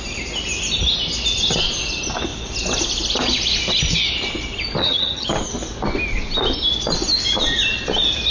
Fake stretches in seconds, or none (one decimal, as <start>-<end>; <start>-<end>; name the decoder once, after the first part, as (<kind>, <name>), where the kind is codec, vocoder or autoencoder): 4.8-5.3 (vocoder, HiFi-GAN)